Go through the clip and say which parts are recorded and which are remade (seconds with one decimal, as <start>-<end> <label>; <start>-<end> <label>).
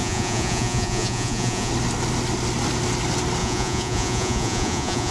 0.0-1.7 remade; 1.7-3.4 recorded; 3.4-5.1 remade